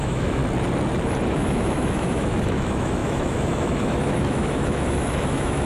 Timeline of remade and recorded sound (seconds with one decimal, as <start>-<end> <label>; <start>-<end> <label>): 0.0-0.4 remade; 0.4-1.3 recorded; 1.3-5.7 remade